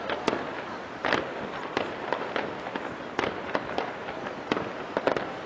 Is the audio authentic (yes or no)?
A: yes